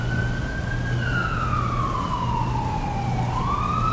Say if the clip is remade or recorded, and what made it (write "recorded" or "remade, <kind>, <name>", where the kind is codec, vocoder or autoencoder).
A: recorded